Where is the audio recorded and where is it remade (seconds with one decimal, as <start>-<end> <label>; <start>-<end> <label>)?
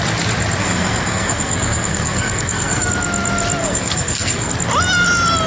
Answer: 0.0-0.6 recorded; 0.6-2.9 remade; 2.9-3.6 recorded; 3.6-4.5 remade; 4.5-5.5 recorded